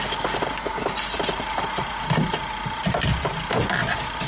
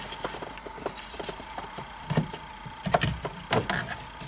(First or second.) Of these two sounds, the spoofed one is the second